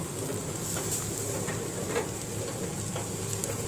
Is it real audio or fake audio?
real